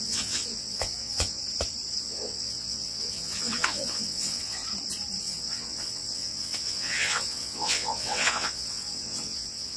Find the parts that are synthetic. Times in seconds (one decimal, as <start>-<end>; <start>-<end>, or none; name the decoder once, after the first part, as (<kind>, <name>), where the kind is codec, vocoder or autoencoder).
0.0-1.4 (vocoder, WaveNeXt); 2.0-4.6; 5.2-9.8